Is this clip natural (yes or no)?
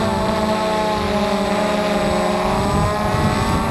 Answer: yes